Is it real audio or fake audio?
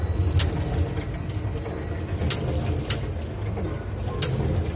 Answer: real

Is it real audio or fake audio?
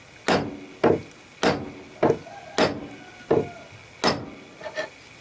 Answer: real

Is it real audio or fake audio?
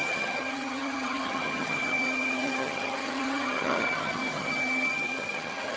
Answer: fake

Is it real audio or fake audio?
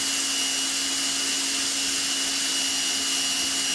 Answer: real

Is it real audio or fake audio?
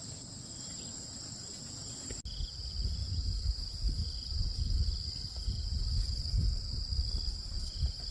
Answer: real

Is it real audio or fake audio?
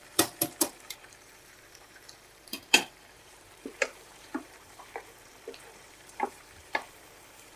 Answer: fake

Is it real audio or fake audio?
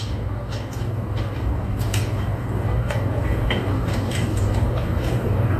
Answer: fake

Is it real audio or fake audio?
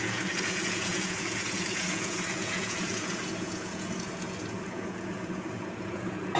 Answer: fake